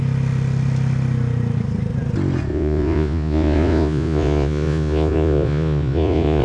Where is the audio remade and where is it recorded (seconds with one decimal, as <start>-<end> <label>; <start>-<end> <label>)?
0.0-2.5 recorded; 2.5-6.4 remade